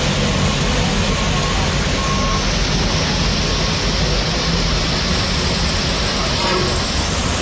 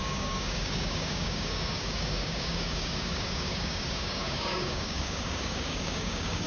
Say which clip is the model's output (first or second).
second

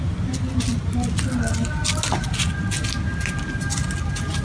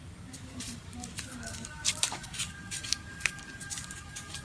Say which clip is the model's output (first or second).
second